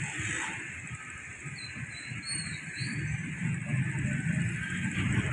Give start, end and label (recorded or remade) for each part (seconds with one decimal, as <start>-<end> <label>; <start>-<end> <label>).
0.0-5.3 recorded

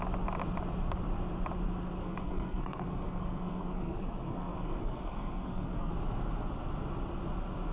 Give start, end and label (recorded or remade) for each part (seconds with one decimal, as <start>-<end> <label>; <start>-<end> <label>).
0.0-2.0 recorded; 2.0-5.9 remade; 5.9-7.7 recorded

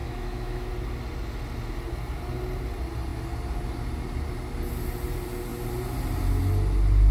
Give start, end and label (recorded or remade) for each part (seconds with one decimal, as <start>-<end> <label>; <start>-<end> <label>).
0.0-0.7 remade; 0.7-7.1 recorded

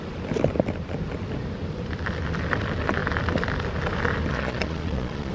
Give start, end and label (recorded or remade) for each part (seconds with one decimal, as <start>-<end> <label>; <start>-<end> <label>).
0.0-4.3 recorded; 4.3-5.3 remade

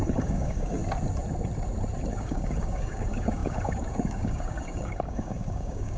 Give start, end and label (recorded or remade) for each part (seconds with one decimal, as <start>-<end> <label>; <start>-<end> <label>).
0.0-0.8 remade; 0.8-2.1 recorded; 2.1-6.0 remade

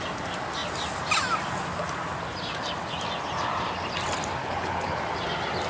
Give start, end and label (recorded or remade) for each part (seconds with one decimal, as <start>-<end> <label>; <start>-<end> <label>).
0.0-4.4 recorded; 4.4-5.0 remade; 5.0-5.7 recorded

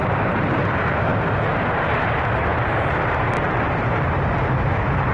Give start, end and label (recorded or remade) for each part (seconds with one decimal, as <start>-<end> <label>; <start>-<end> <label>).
0.0-1.1 remade; 1.1-1.7 recorded; 1.7-5.1 remade